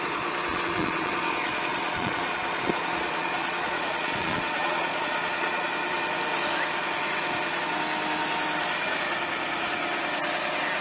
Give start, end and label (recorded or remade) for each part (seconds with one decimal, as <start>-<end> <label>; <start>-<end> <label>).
0.0-0.5 recorded; 0.5-5.7 remade; 5.7-10.8 recorded